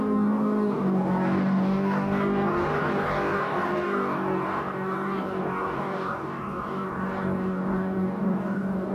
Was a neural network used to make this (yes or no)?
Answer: yes